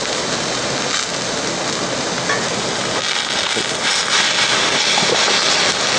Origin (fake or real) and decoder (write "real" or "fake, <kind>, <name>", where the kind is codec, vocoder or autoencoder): real